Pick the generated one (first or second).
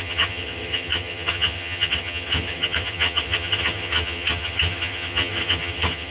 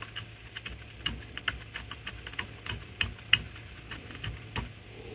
first